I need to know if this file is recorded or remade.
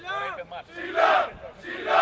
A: recorded